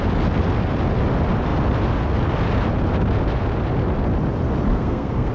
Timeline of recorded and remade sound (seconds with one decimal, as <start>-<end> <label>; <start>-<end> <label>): 0.0-4.7 recorded; 4.7-5.3 remade